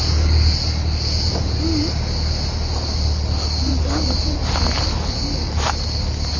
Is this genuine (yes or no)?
yes